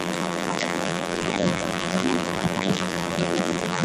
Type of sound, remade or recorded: remade